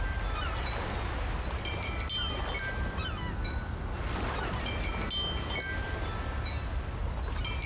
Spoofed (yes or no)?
no